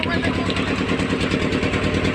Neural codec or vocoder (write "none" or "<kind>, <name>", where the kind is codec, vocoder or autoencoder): none